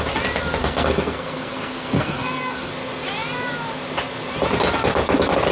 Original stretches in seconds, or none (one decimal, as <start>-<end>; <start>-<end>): 0.0-0.6; 2.7-5.5